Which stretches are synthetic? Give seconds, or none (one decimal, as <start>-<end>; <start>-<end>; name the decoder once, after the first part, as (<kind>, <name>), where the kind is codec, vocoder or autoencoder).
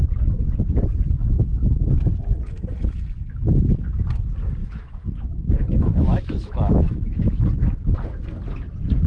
4.6-7.4 (autoencoder, DAC-VAE)